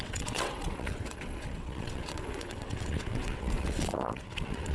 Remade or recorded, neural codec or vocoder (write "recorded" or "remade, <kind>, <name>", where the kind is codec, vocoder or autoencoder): remade, vocoder, WaveNeXt